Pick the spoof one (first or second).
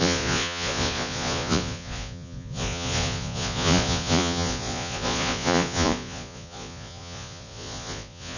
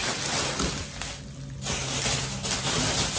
first